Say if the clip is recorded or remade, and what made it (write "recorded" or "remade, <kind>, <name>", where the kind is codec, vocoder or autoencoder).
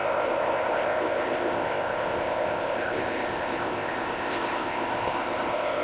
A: remade, codec, ZipCodec